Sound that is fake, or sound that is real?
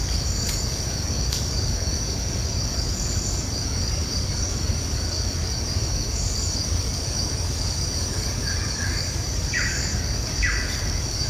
fake